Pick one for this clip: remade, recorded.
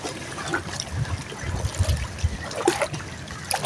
recorded